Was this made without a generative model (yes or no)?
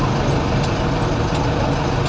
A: yes